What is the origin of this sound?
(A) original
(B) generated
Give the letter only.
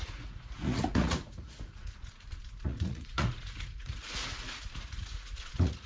B